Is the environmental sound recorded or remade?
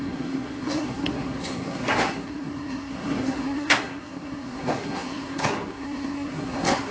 remade